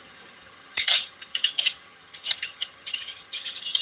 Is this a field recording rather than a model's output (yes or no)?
no